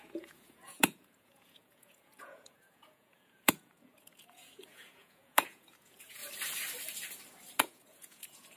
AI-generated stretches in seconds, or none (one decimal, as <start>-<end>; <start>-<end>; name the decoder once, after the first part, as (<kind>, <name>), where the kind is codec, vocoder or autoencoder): 0.0-6.2 (vocoder, Vocos); 7.6-8.6